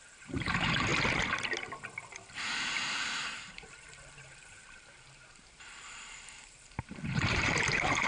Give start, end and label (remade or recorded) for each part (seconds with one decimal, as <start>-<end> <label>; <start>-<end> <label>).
0.0-0.9 remade; 0.9-2.5 recorded; 2.5-8.1 remade